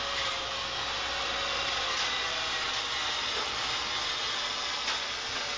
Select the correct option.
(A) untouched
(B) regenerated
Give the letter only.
A